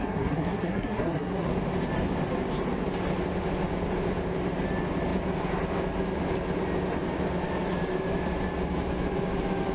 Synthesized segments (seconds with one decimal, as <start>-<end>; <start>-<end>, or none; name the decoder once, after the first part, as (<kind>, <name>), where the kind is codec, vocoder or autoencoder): 0.0-1.5 (codec, SNAC)